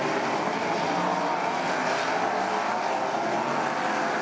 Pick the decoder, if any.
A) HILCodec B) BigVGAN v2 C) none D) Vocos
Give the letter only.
C